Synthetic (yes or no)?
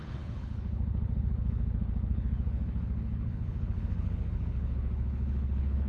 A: yes